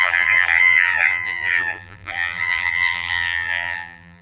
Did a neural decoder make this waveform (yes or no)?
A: yes